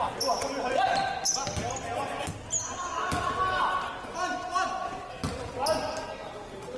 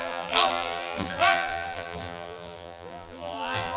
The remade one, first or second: second